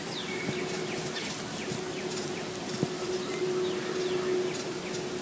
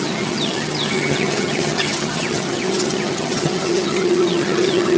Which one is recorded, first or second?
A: first